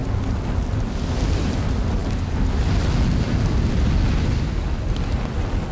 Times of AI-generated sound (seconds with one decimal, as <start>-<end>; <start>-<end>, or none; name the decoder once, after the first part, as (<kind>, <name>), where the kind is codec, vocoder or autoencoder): none